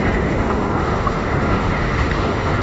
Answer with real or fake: fake